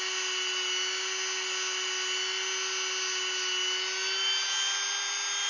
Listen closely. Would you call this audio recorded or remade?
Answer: recorded